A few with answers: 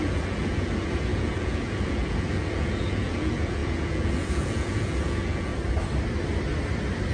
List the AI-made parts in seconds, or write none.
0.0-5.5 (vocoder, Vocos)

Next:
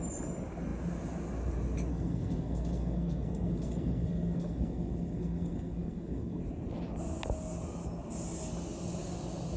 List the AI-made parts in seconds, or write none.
1.9-6.4 (codec, SNAC)

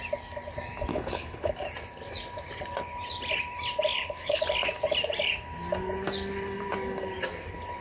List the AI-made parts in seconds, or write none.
0.9-1.5 (codec, HILCodec); 3.9-4.4

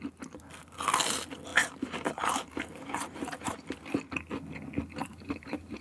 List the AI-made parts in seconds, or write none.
1.5-3.8 (vocoder, BigVGAN v2); 5.0-5.8